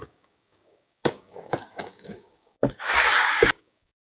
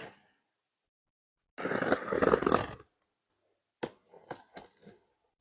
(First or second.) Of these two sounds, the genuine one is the second